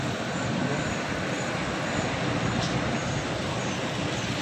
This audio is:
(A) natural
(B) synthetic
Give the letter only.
A